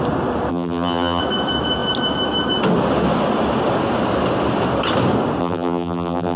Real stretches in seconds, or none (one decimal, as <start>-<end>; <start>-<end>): 0.0-0.5; 1.2-5.4